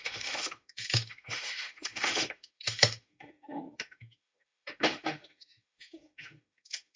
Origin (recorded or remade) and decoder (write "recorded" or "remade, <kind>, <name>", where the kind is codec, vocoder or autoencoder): remade, autoencoder, DAC-VAE